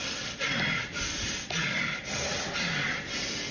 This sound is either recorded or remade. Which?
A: recorded